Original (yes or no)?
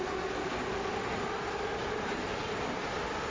yes